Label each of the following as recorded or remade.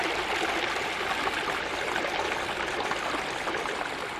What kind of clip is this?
recorded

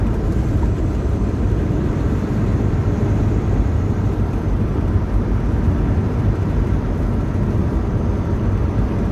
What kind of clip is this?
remade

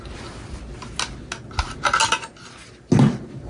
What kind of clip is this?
recorded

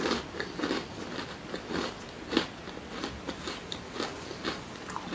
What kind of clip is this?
recorded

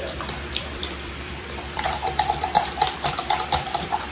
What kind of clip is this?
remade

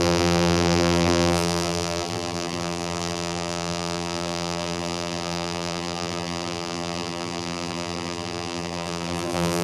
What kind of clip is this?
remade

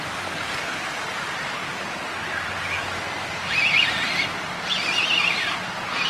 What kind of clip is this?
recorded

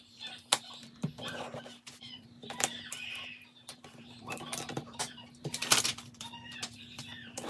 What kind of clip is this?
remade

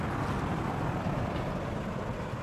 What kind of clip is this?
recorded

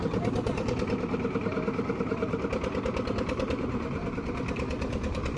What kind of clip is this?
remade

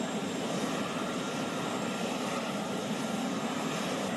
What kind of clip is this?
remade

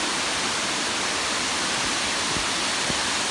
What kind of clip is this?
remade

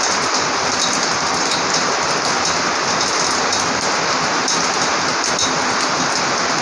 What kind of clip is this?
recorded